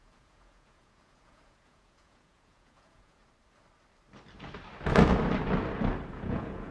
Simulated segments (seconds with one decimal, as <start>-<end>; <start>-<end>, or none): 0.0-3.2; 6.1-6.7